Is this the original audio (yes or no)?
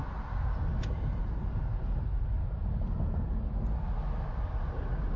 yes